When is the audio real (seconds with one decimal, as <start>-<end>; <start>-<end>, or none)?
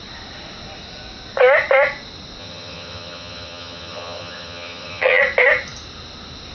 0.0-2.4; 5.2-6.5